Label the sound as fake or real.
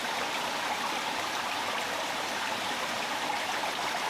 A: real